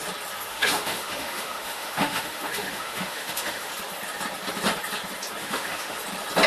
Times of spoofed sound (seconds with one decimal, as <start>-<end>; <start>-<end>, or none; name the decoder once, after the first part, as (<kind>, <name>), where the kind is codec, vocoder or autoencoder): 0.5-3.7 (autoencoder, DAC-VAE); 5.4-6.0